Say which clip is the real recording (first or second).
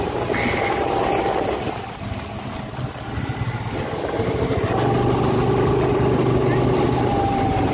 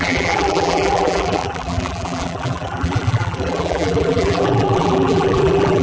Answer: first